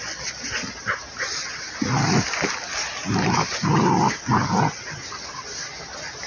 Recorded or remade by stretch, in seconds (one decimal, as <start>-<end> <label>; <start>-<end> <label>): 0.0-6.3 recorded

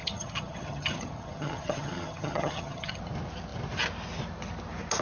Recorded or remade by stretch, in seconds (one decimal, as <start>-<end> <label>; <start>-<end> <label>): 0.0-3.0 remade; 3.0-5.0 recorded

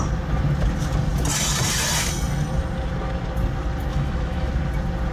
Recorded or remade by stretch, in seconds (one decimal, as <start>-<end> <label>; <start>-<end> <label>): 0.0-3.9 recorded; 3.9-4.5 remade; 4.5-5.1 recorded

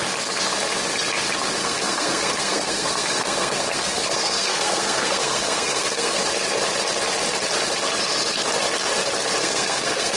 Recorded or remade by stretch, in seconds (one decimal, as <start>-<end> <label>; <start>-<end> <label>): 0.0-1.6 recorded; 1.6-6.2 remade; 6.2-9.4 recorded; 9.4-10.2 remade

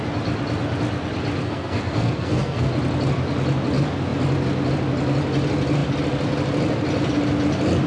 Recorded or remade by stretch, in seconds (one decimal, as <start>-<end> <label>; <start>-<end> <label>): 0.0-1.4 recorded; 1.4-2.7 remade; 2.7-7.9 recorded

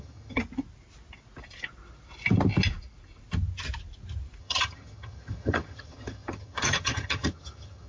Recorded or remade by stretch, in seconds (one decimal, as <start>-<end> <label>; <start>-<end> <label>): 0.0-0.4 remade; 0.4-4.4 recorded; 4.4-7.9 remade